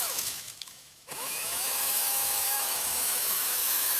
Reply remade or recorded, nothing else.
remade